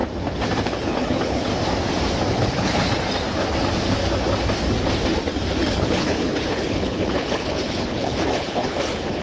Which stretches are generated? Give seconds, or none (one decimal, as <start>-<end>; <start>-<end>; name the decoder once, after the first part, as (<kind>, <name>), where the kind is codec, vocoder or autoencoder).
0.6-1.5 (codec, HILCodec); 2.3-2.9; 5.7-9.2